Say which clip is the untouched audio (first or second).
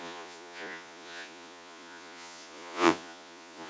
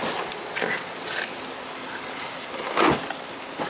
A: second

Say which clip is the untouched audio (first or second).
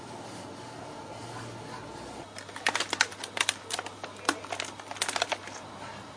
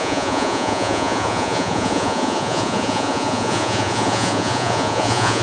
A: first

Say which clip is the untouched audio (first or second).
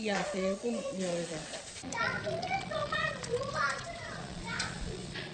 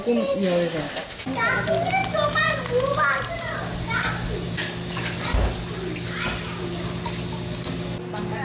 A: second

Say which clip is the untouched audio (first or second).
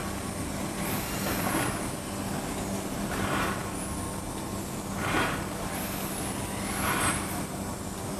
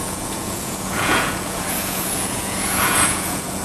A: first